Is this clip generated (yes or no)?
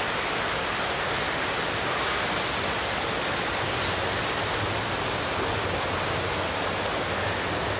no